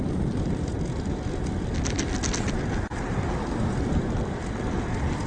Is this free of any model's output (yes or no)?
yes